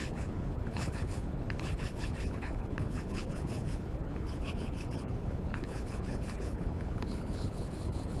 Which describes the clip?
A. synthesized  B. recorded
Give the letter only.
A